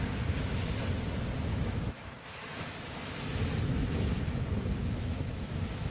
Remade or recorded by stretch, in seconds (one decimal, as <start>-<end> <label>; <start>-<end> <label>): 0.0-1.5 recorded; 1.5-3.2 remade; 3.2-4.8 recorded; 4.8-5.5 remade; 5.5-5.9 recorded